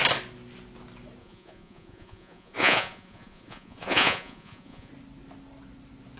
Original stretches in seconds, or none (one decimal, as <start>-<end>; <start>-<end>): 0.0-1.2; 4.9-6.2